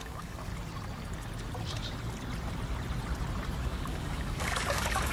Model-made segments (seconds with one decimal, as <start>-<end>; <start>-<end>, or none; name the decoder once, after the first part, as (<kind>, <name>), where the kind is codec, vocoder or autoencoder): 0.0-0.5 (codec, DAC); 3.6-5.1